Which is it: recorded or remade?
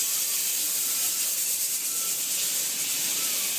recorded